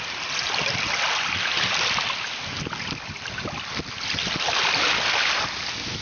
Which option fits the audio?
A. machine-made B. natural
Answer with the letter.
B